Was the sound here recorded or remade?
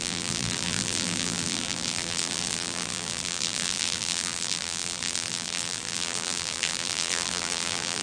remade